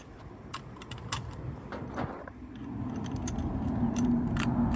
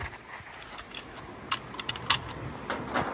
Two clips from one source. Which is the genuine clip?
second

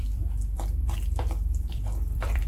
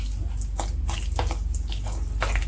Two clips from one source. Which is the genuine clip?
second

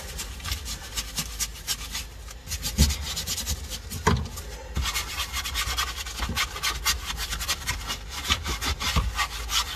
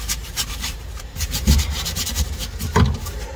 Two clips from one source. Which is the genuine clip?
first